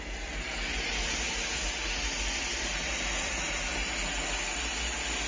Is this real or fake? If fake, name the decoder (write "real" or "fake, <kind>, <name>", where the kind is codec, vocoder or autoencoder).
real